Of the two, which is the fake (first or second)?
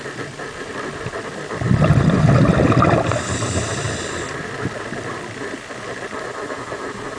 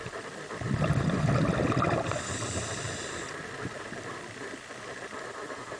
second